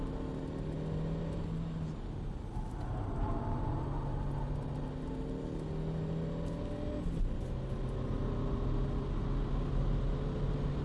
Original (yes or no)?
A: yes